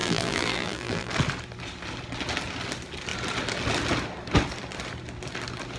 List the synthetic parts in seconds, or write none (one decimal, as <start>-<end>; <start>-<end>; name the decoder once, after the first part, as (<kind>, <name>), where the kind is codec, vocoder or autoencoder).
0.0-1.1 (vocoder, BigVGAN v2)